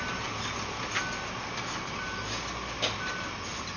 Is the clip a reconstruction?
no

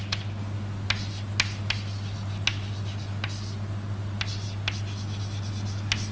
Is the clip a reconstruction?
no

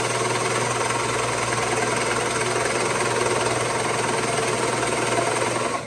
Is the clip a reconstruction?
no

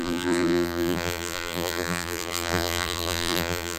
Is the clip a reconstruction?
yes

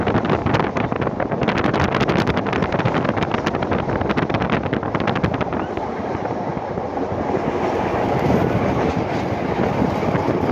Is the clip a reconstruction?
yes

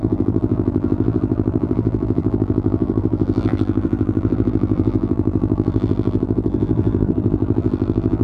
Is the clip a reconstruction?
yes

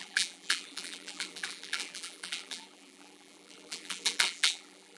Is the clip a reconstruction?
yes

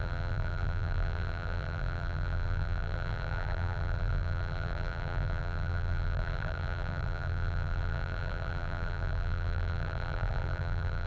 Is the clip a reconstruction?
yes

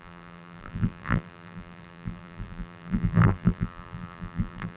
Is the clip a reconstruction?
yes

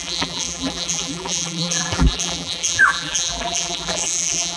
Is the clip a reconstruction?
yes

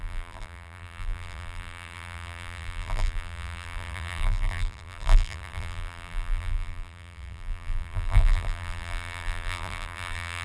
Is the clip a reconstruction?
yes